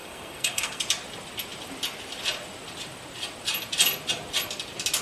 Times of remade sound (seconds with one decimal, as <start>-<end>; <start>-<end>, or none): 0.0-0.8